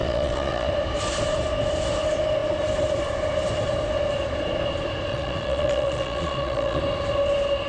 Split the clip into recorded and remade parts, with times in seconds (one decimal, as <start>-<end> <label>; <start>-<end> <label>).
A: 0.0-0.7 remade; 0.7-5.1 recorded; 5.1-6.8 remade; 6.8-7.7 recorded